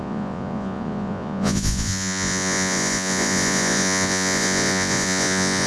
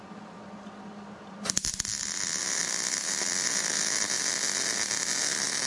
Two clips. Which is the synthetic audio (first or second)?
first